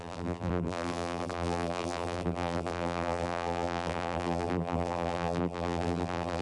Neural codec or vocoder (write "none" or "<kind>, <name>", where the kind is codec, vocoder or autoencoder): vocoder, BigVGAN v2